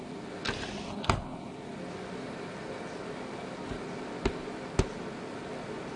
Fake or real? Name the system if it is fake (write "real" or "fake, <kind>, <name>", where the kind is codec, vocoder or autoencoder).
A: real